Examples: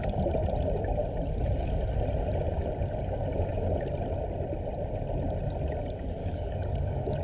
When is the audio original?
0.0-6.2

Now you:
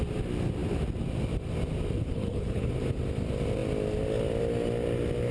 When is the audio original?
0.0-2.0; 2.7-5.3